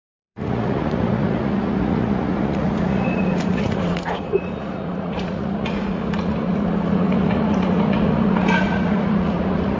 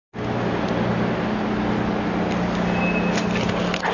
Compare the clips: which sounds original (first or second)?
second